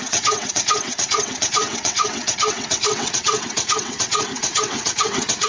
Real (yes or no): no